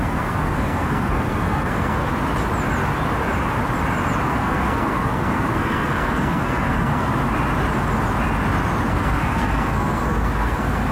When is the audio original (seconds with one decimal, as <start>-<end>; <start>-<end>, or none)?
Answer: 2.1-4.2; 7.1-8.9